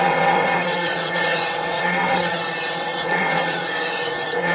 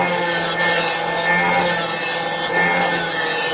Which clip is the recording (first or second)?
second